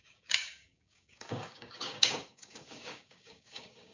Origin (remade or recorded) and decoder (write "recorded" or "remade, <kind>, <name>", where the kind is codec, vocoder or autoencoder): remade, codec, DAC